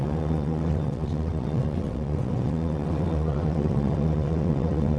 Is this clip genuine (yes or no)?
no